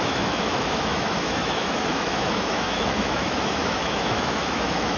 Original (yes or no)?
no